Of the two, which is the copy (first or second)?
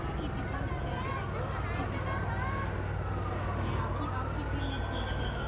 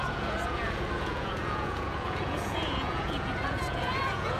second